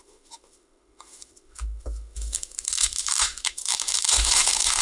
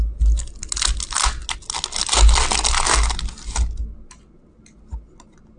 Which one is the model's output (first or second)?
first